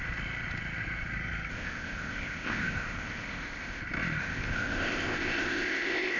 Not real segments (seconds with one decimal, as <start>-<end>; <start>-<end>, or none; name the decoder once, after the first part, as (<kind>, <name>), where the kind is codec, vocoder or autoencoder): 1.5-3.8 (codec, ZipCodec); 4.2-6.2

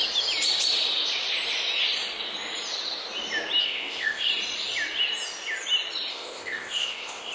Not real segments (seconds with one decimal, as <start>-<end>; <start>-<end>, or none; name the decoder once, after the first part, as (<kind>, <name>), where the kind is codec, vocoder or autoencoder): 3.6-4.3 (codec, ZipCodec); 6.1-7.3

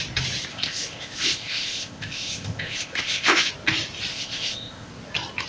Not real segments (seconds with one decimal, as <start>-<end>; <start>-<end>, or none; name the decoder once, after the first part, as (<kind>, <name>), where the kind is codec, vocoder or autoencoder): 0.5-3.5 (codec, ZipCodec); 4.1-4.9

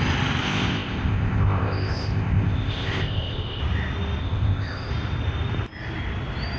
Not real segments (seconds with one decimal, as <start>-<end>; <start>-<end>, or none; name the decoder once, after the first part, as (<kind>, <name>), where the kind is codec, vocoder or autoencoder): 0.4-3.6 (codec, ZipCodec); 4.2-4.9

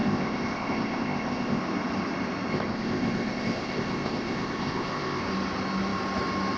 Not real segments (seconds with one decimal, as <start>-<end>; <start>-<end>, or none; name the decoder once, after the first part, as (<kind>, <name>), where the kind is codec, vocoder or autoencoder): 0.0-1.6 (codec, ZipCodec); 2.5-5.2

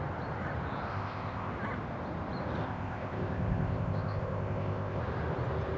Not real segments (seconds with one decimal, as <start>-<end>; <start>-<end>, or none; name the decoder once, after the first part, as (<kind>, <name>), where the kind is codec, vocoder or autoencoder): 0.9-1.5 (codec, ZipCodec); 2.6-5.0

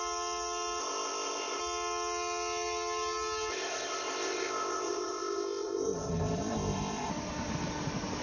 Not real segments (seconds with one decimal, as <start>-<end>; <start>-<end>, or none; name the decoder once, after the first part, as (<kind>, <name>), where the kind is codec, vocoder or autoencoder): 0.8-1.6 (codec, ZipCodec); 3.5-7.1